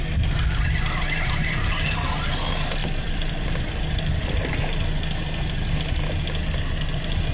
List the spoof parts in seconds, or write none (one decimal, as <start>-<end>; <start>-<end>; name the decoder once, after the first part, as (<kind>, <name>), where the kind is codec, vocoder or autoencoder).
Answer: 2.8-4.5 (vocoder, BigVGAN v2)